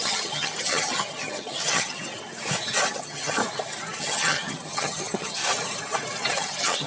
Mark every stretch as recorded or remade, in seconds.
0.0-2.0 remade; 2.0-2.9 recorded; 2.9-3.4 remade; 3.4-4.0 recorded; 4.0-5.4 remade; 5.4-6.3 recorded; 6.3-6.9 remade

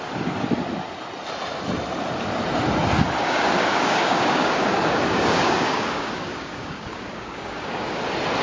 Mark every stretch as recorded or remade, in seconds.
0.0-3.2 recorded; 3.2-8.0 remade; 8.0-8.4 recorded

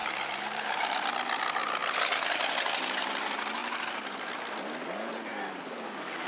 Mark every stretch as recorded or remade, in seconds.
0.0-1.1 remade; 1.1-5.3 recorded; 5.3-6.3 remade